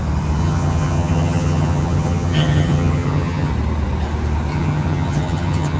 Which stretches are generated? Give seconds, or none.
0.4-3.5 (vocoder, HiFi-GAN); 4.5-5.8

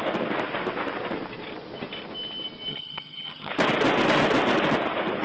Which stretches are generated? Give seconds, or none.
2.7-3.5 (vocoder, HiFi-GAN)

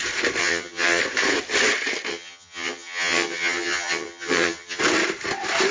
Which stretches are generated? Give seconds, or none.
0.4-1.0 (vocoder, HiFi-GAN); 2.1-4.8

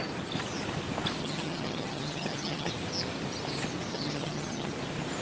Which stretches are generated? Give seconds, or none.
1.2-2.7 (vocoder, HiFi-GAN); 3.9-4.7

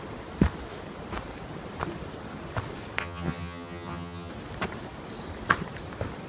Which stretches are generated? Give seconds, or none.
3.0-4.3 (vocoder, HiFi-GAN)

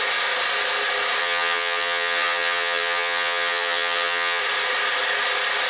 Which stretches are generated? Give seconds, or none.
1.2-4.4 (vocoder, HiFi-GAN)

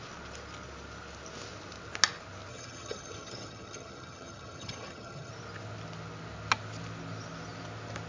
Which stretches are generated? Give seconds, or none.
2.5-5.3 (vocoder, HiFi-GAN)

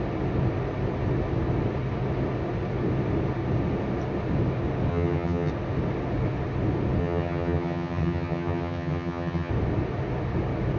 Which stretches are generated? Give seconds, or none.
4.9-5.5 (vocoder, HiFi-GAN); 7.0-9.5